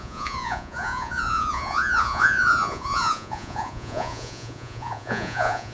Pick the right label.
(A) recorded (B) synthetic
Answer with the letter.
B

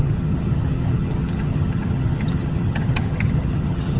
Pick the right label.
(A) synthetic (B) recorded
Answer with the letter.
A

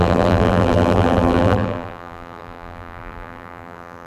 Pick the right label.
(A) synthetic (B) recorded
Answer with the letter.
A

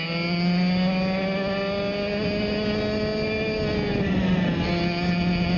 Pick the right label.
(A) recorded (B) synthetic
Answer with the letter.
A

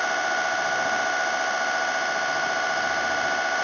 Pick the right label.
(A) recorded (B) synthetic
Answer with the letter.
A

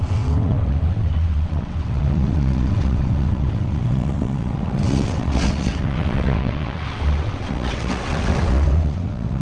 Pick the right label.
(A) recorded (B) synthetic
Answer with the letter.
B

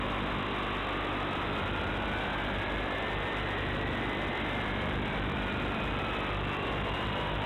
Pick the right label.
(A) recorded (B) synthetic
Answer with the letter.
A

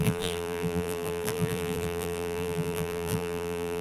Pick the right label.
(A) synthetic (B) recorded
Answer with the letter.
A